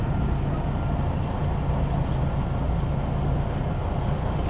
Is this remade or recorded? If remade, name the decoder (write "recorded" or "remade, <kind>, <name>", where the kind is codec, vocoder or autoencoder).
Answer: recorded